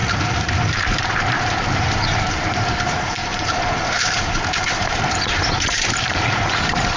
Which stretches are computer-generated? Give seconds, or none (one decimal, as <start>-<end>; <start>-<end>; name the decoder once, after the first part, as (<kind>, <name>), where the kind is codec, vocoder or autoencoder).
0.0-7.0 (vocoder, BigVGAN v2)